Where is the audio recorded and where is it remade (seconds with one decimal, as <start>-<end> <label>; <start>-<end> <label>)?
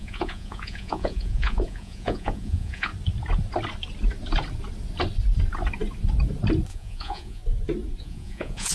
0.0-2.9 remade; 2.9-6.7 recorded; 6.7-7.4 remade; 7.4-8.0 recorded; 8.0-8.7 remade